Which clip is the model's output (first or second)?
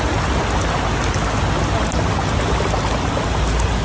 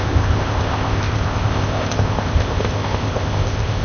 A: second